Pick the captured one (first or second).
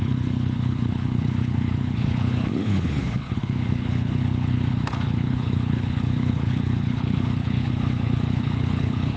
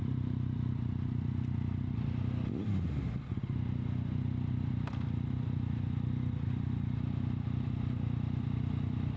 second